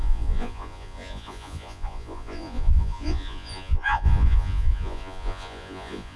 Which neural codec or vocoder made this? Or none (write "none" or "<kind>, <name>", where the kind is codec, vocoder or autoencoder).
vocoder, Vocos